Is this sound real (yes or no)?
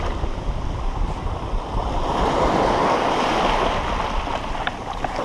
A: yes